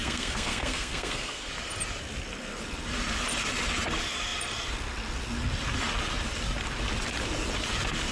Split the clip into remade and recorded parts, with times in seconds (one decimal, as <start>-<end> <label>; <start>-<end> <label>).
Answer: 0.0-1.5 remade; 1.5-8.1 recorded